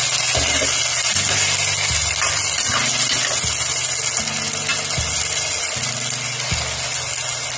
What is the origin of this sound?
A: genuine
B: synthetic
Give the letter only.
A